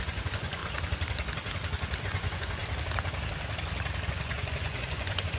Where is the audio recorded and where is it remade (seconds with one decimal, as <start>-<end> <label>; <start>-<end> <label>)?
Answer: 0.0-0.6 remade; 0.6-2.0 recorded; 2.0-2.6 remade; 2.6-4.1 recorded; 4.1-5.4 remade